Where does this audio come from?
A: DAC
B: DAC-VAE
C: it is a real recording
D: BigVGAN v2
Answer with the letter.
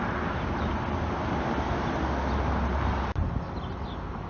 C